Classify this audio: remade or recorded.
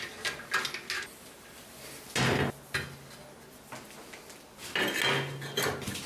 recorded